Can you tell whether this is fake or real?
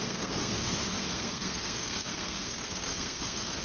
fake